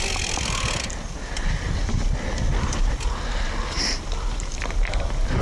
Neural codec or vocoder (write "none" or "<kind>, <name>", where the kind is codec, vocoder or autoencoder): none